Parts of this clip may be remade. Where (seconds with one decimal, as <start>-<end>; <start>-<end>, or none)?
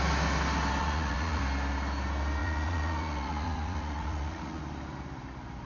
0.8-1.4; 2.4-4.6